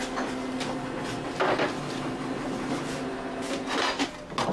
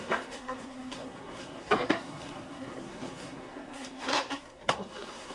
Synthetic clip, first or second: second